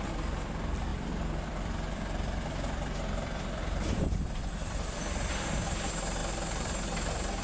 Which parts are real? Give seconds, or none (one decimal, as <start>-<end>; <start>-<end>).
0.0-0.9; 5.3-6.2; 6.7-7.4